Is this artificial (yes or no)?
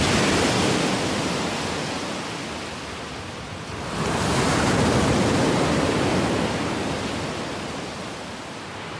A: no